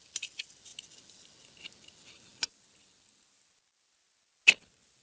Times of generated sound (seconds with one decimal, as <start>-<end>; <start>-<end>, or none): none